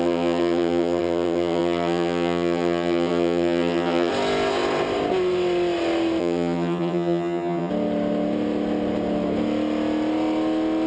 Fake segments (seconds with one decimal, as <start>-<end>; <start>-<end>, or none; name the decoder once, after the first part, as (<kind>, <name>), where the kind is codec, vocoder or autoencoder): 0.0-4.1 (vocoder, HiFi-GAN); 6.2-7.7